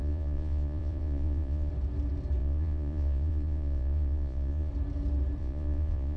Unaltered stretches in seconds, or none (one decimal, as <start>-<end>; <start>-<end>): 1.7-2.4; 4.7-5.4